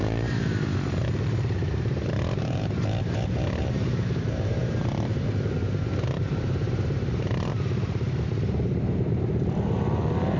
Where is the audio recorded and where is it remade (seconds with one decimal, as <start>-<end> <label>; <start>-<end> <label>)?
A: 0.0-10.4 remade